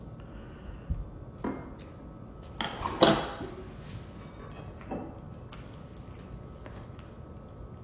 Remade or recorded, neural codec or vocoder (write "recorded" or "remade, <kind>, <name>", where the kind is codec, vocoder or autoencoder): recorded